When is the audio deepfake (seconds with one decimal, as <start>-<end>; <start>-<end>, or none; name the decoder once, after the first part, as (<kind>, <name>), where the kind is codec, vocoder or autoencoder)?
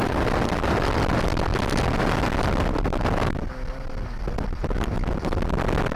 none